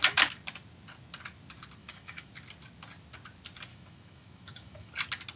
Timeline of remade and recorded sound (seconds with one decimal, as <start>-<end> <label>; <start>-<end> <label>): 0.0-1.8 recorded; 1.8-2.3 remade; 2.3-3.7 recorded; 3.7-4.9 remade; 4.9-5.4 recorded